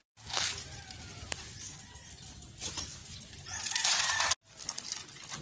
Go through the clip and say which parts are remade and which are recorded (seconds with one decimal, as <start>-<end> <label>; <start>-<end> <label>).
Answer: 0.0-5.4 recorded